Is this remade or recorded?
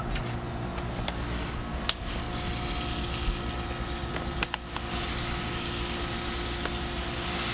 recorded